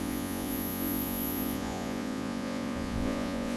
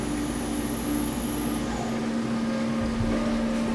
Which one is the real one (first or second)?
second